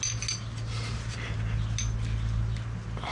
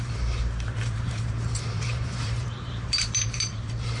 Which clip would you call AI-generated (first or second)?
second